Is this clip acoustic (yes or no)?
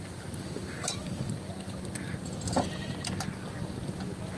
yes